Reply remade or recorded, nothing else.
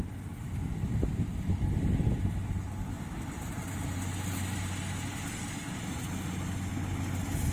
recorded